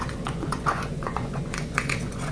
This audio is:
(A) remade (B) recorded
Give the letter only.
A